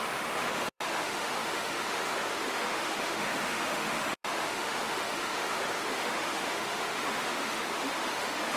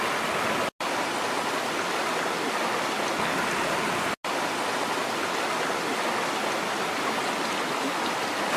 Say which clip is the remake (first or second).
first